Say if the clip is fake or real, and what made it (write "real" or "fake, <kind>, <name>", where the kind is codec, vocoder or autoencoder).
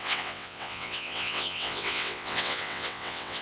fake, vocoder, WaveNeXt